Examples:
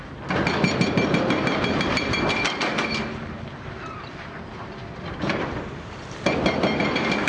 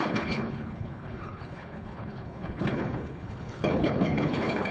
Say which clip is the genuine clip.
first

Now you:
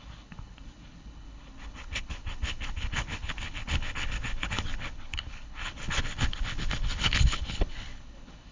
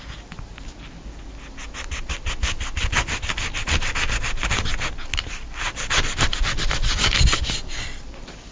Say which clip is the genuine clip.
second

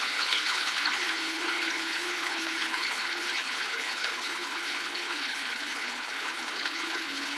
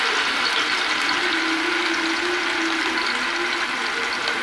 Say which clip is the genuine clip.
second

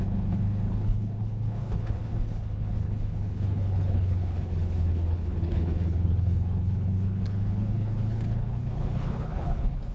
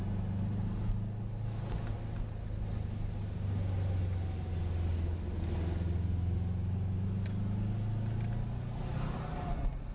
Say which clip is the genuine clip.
second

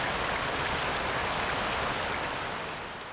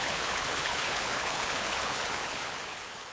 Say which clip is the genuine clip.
first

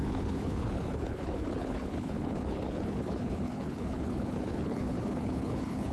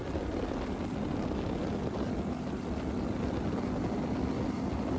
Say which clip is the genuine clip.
second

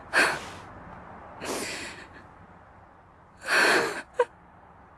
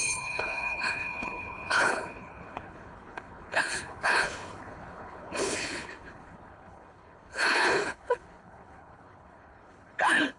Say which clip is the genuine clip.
first